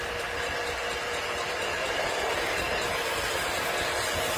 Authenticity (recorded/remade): recorded